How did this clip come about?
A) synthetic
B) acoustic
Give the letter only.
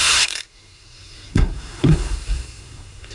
A